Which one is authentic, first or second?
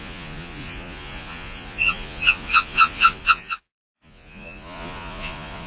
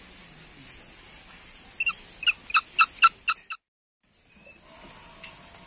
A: second